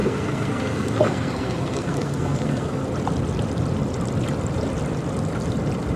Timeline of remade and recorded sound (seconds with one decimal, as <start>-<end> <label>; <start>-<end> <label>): 0.0-2.8 remade; 2.8-6.0 recorded